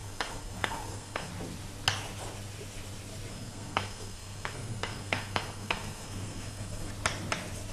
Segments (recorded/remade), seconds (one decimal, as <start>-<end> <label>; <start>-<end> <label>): 0.0-1.3 remade; 1.3-3.3 recorded; 3.3-6.9 remade; 6.9-7.7 recorded